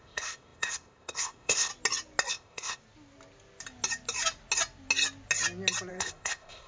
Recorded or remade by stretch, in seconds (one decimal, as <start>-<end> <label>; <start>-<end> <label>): 0.0-1.7 remade; 1.7-2.3 recorded; 2.3-2.8 remade; 2.8-5.9 recorded; 5.9-6.7 remade